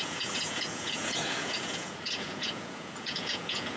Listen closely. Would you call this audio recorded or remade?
remade